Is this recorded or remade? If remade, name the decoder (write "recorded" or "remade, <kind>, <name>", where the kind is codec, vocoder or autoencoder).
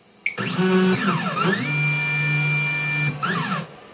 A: recorded